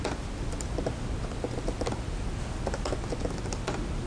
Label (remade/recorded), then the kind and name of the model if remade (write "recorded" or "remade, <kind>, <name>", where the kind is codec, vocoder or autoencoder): recorded